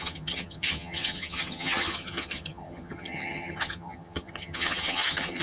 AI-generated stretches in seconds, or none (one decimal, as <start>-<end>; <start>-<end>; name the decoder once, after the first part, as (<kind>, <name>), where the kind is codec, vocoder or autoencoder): 0.0-5.4 (vocoder, HiFi-GAN)